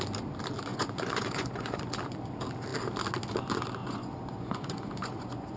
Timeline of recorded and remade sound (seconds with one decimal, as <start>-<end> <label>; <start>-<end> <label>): 0.0-0.7 recorded; 0.7-1.8 remade; 1.8-3.8 recorded; 3.8-5.6 remade